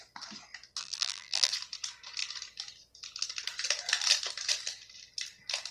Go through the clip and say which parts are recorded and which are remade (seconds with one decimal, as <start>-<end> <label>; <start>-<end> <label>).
0.0-0.8 recorded; 0.8-1.5 remade; 1.5-5.7 recorded